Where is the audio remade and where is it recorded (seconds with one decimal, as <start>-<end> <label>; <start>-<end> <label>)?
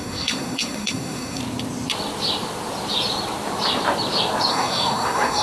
0.0-1.4 remade; 1.4-4.5 recorded; 4.5-5.4 remade